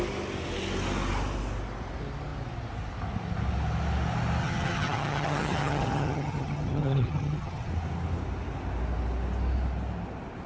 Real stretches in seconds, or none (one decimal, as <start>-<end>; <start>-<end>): 0.0-4.4; 7.7-10.5

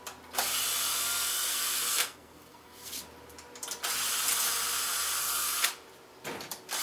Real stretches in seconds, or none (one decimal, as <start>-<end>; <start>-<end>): 0.0-0.9; 3.0-5.2; 5.7-6.8

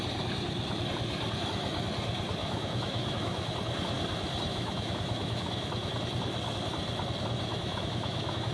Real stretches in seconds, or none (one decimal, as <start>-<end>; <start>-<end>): 0.0-2.4; 3.5-4.5; 5.9-7.5